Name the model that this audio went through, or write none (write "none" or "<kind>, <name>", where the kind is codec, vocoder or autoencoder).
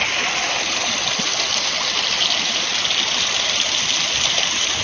none